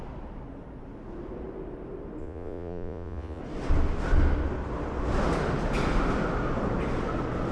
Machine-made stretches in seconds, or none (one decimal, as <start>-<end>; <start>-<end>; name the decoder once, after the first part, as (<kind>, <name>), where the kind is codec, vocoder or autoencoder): 2.2-3.4 (vocoder, Vocos)